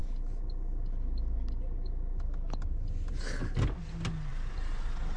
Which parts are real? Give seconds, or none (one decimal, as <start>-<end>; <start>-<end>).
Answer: 0.0-4.3